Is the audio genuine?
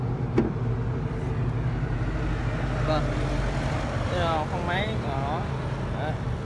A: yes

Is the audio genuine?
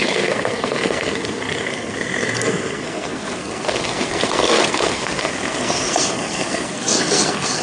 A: no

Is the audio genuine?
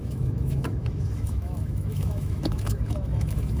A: no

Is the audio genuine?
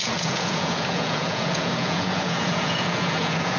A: no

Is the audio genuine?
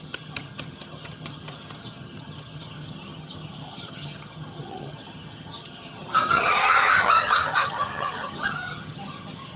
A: no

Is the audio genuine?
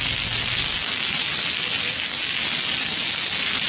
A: yes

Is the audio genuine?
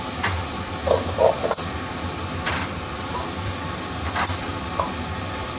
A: no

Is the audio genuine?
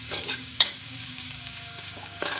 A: no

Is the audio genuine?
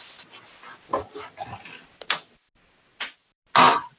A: yes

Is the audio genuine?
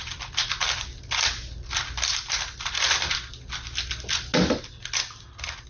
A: yes